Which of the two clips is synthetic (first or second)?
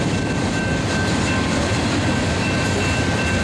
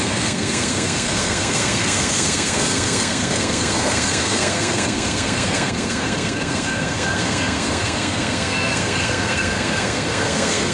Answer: second